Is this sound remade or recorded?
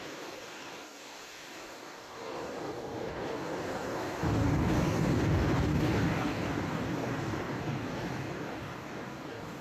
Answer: remade